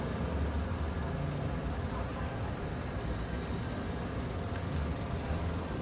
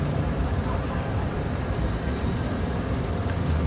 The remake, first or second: second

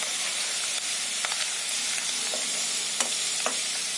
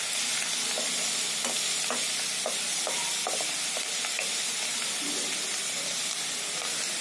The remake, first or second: first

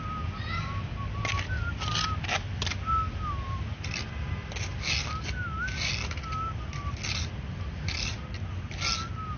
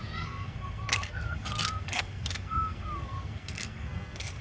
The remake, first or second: second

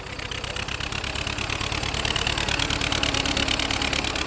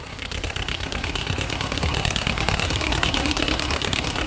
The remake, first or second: second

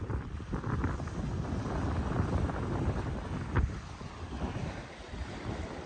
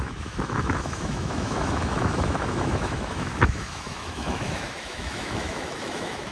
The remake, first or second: second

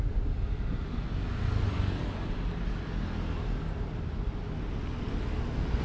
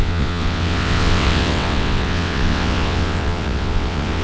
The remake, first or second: second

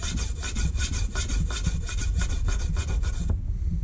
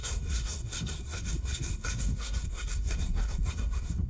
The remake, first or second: second